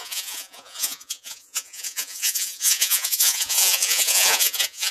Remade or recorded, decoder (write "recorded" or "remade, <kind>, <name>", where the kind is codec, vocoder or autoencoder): remade, vocoder, Vocos